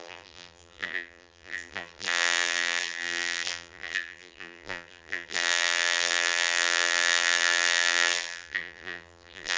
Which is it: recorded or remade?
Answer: remade